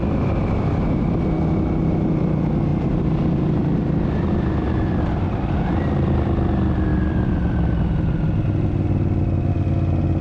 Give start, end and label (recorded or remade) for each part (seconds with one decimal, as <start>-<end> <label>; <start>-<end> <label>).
0.0-2.7 recorded; 2.7-6.5 remade; 6.5-6.9 recorded; 6.9-7.8 remade; 7.8-10.2 recorded